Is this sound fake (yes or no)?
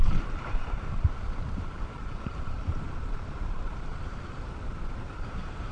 yes